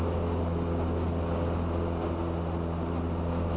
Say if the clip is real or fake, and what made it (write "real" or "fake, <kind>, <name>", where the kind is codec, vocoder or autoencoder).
real